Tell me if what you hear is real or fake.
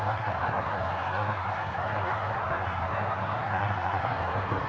fake